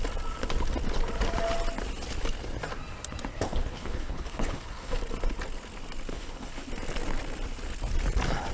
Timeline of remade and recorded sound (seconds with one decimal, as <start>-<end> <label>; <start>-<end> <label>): 0.0-3.3 recorded; 3.3-5.0 remade; 5.0-6.1 recorded; 6.1-6.7 remade; 6.7-8.5 recorded